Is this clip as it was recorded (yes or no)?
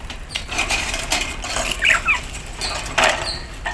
yes